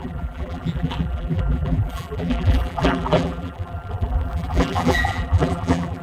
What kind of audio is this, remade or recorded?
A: remade